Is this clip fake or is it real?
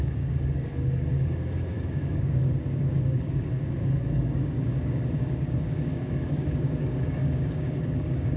fake